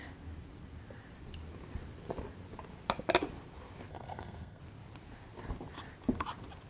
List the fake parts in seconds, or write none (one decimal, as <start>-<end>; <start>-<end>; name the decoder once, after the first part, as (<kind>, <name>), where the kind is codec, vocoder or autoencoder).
3.9-4.6 (codec, SNAC)